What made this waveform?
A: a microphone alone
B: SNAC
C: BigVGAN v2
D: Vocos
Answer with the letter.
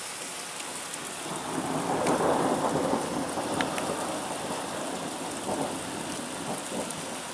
A